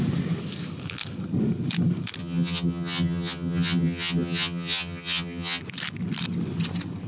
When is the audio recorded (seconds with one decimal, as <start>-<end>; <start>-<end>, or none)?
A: 0.0-2.2; 5.6-7.1

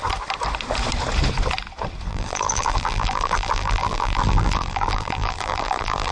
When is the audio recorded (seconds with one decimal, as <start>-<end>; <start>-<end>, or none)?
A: 0.0-2.1

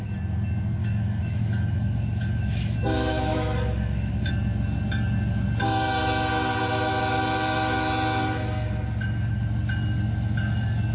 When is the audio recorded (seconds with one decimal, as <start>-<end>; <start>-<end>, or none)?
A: 0.0-0.8; 4.3-10.9

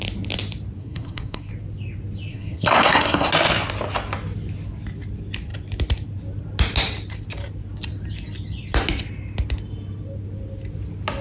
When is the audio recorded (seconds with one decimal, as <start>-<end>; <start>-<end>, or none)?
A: 0.0-0.8; 1.5-2.3; 3.3-11.2